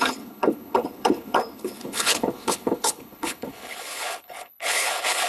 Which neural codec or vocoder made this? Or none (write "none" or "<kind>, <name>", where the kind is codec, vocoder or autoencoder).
codec, HILCodec